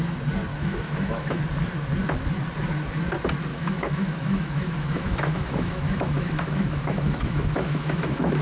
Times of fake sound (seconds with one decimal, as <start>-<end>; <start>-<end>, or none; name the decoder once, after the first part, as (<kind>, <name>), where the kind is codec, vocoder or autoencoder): 0.5-1.4 (autoencoder, DAC-VAE); 3.5-8.4